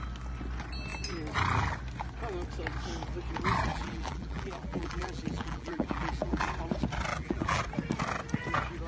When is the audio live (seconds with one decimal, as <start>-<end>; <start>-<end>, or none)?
0.0-3.7; 6.5-7.1; 7.6-8.9